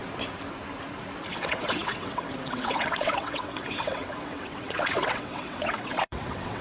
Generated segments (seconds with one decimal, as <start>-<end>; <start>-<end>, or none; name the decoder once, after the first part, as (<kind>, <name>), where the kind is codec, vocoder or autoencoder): 1.3-6.6 (vocoder, WaveNeXt)

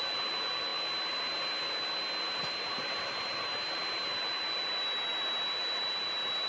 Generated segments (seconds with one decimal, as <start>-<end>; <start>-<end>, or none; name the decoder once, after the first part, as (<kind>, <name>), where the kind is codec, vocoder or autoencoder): none

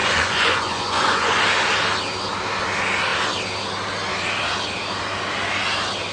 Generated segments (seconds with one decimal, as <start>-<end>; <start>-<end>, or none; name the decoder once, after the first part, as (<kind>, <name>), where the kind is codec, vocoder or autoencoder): 0.0-1.4 (vocoder, Vocos)

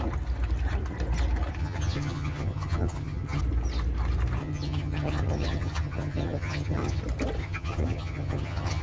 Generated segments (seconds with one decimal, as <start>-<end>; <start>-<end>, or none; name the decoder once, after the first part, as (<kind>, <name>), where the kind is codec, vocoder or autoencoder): 1.6-3.4 (vocoder, HiFi-GAN); 4.4-7.0; 7.4-8.8

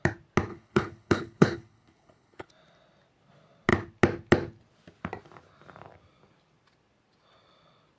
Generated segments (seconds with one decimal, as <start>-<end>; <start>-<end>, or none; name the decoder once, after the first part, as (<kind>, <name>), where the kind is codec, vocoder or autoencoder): 0.5-2.5 (codec, HILCodec)

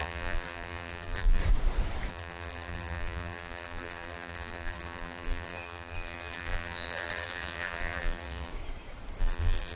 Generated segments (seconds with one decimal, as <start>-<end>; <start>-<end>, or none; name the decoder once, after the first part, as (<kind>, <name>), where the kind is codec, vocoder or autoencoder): 0.0-1.4 (vocoder, BigVGAN v2); 2.1-8.5; 9.2-9.8